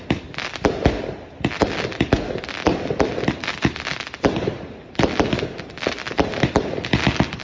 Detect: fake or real real